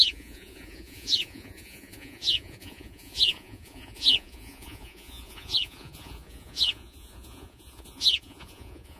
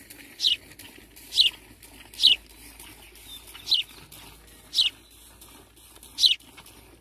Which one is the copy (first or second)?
first